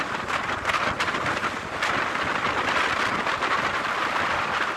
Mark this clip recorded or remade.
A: recorded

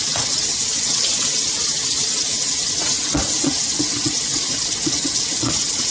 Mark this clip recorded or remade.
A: remade